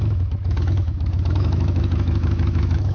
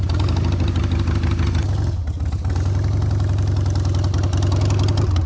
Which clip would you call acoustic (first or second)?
second